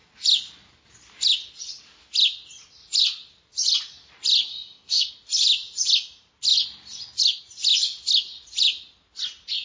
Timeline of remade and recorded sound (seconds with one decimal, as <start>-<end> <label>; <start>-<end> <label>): 0.0-4.5 recorded; 4.5-5.1 remade; 5.1-9.6 recorded